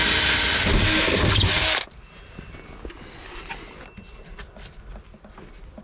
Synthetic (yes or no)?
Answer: no